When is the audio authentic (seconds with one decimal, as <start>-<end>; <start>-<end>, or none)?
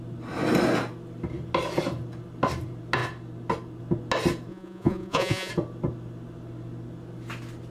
0.0-4.5; 5.5-7.7